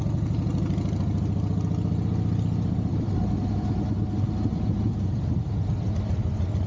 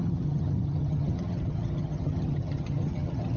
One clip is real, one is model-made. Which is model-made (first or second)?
second